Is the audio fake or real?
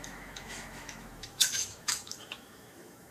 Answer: fake